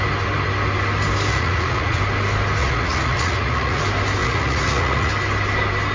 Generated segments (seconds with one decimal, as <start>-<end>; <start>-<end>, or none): 1.3-2.0; 2.6-3.8; 4.2-5.1